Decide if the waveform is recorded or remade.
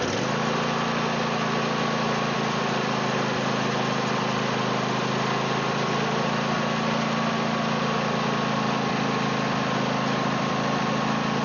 recorded